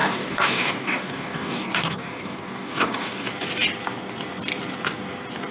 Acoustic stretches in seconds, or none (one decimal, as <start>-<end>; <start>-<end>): 3.3-5.5